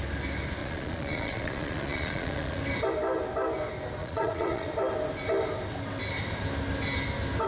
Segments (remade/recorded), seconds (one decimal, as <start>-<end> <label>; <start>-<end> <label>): 0.0-0.6 recorded; 0.6-2.6 remade; 2.6-4.0 recorded; 4.0-4.7 remade; 4.7-7.5 recorded